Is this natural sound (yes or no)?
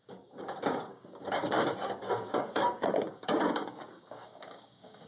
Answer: no